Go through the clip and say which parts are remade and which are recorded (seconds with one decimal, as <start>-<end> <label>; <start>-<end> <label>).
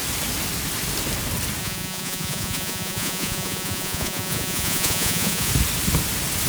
0.0-1.6 recorded; 1.6-5.5 remade; 5.5-6.5 recorded